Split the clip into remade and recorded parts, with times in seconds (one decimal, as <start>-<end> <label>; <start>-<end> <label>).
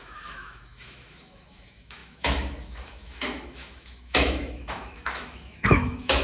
0.0-6.2 remade